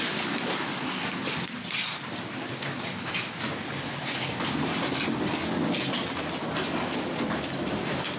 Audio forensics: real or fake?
real